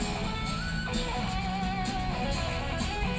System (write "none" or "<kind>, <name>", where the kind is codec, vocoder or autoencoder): none